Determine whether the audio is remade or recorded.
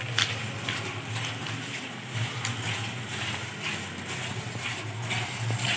recorded